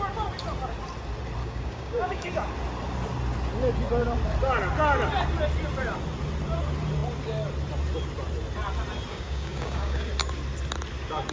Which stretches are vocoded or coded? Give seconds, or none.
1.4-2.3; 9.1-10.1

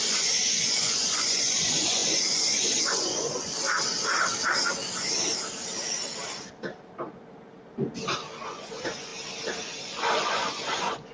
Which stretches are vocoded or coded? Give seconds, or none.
0.0-3.5; 8.5-9.1; 9.8-11.1

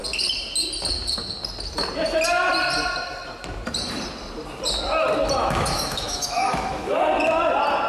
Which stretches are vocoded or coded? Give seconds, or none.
5.4-7.0